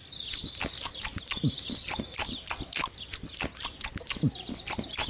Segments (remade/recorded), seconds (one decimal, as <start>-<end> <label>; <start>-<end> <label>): 0.0-5.1 recorded